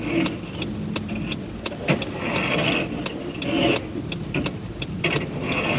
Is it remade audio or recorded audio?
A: recorded